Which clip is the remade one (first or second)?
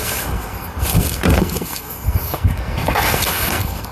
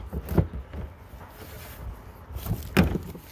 first